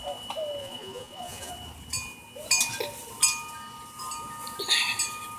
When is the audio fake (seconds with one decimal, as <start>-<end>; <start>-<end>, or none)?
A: 0.6-1.5